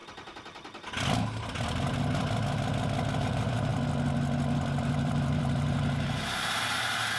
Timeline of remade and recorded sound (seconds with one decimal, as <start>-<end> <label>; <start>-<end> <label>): 0.0-3.2 recorded; 3.2-3.7 remade; 3.7-4.9 recorded; 4.9-7.2 remade